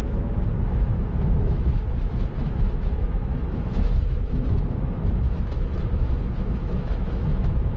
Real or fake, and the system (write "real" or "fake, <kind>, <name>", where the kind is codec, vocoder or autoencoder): fake, autoencoder, DAC-VAE